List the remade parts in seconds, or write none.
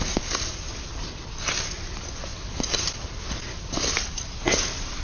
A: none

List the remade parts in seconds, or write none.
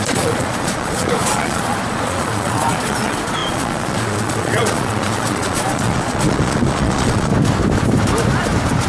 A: 0.0-7.3 (vocoder, Vocos)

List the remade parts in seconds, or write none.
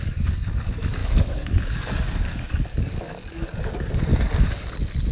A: 0.0-4.1 (codec, DAC)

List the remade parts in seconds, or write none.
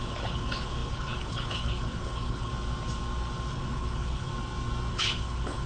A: 0.0-2.5 (codec, HILCodec); 3.5-4.3; 4.9-5.7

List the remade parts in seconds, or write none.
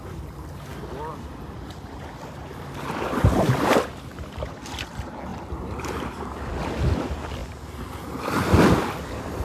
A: 5.3-6.5 (vocoder, BigVGAN v2)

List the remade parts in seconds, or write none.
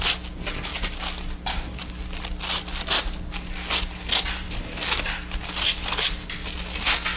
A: none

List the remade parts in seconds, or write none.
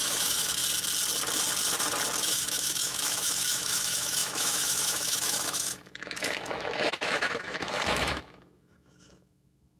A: 0.0-0.6 (autoencoder, DAC-VAE); 2.2-9.8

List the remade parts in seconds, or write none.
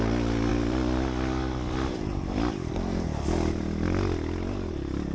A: 0.5-3.6 (vocoder, BigVGAN v2)